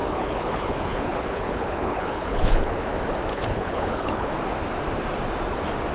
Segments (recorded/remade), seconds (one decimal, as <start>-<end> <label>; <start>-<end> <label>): 0.0-2.9 remade; 2.9-3.3 recorded; 3.3-4.3 remade; 4.3-5.9 recorded